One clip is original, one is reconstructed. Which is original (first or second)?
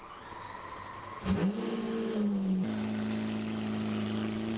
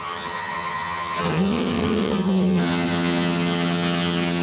first